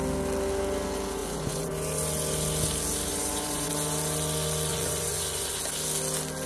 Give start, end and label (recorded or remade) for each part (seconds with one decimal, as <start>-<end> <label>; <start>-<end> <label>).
0.0-1.2 recorded; 1.2-1.7 remade; 1.7-3.1 recorded; 3.1-3.7 remade; 3.7-4.7 recorded; 4.7-5.6 remade; 5.6-6.5 recorded